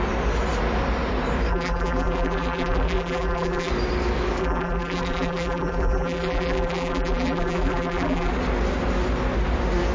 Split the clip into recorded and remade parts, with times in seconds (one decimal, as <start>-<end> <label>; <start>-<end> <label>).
0.0-1.5 recorded; 1.5-3.7 remade; 3.7-4.4 recorded; 4.4-8.3 remade; 8.3-9.9 recorded